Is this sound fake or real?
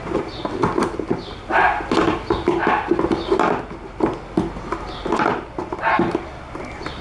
real